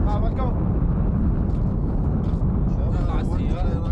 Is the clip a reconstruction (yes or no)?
no